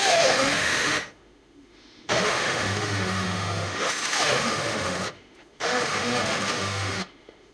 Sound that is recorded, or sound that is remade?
remade